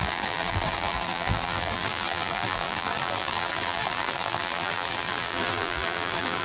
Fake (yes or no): yes